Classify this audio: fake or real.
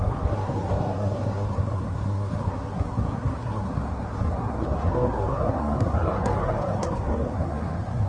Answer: fake